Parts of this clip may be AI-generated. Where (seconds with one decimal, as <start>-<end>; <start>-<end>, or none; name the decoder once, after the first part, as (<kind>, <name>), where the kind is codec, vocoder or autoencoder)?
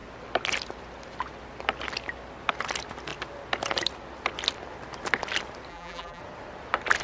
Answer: 5.7-6.2 (vocoder, BigVGAN v2)